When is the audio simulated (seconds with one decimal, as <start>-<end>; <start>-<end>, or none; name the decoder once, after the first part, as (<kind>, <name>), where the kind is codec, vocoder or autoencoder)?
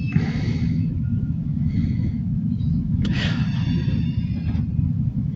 0.0-3.4 (autoencoder, DAC-VAE); 4.8-5.4